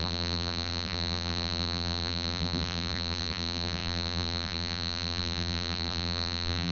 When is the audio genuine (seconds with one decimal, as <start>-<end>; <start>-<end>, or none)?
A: none